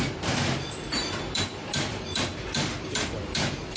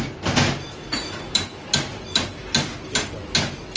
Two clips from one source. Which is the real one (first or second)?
second